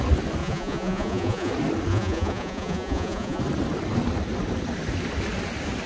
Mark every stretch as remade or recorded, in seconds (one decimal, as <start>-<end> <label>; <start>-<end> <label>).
0.0-0.4 recorded; 0.4-1.5 remade; 1.5-1.9 recorded; 1.9-3.4 remade; 3.4-5.9 recorded